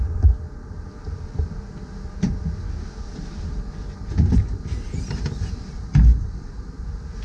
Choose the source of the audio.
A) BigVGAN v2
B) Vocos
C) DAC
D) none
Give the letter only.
D